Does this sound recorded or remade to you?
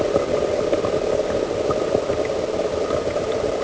recorded